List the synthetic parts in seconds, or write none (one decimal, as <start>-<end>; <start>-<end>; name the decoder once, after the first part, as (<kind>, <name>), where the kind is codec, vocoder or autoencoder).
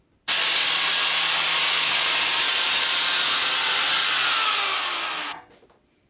0.9-1.6 (vocoder, BigVGAN v2)